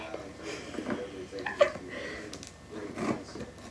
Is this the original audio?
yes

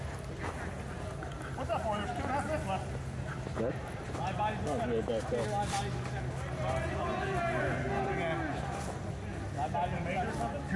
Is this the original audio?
yes